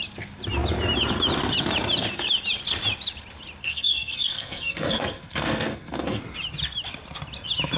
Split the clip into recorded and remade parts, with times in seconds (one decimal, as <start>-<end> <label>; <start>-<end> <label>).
0.0-3.6 recorded; 3.6-6.2 remade; 6.2-7.8 recorded